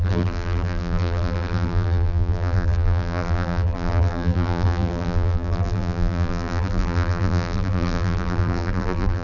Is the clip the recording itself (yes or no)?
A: no